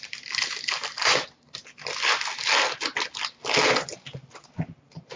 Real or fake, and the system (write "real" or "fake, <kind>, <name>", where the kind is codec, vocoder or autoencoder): real